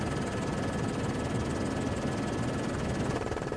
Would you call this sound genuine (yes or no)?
yes